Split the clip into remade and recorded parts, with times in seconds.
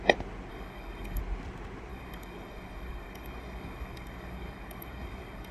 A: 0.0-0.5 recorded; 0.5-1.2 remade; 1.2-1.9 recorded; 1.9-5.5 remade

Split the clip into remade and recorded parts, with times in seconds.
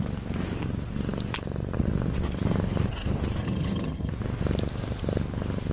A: 0.0-3.4 recorded; 3.4-4.1 remade; 4.1-5.7 recorded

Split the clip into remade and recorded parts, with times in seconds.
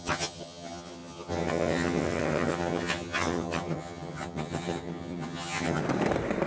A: 0.0-5.8 remade; 5.8-6.5 recorded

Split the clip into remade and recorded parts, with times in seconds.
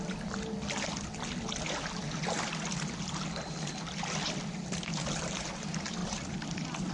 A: 0.0-6.0 recorded; 6.0-6.9 remade